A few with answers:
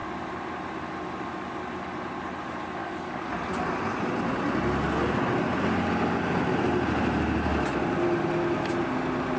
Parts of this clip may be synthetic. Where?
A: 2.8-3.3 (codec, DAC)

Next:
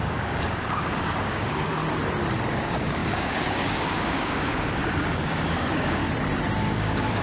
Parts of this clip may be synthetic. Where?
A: 0.0-1.8 (codec, DAC); 2.5-6.0; 6.6-7.2

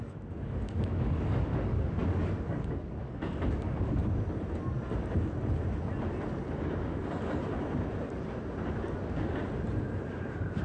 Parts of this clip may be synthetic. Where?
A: 0.0-4.0 (codec, DAC); 8.7-9.4; 10.0-10.6